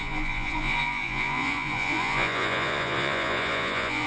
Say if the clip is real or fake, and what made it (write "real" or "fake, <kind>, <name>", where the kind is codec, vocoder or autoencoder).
fake, vocoder, Vocos